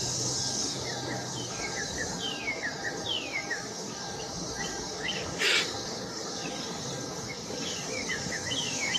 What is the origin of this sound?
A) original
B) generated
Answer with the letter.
B